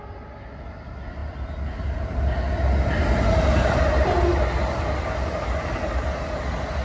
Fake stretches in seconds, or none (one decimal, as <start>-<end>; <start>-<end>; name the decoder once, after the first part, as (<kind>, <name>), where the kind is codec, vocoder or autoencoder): none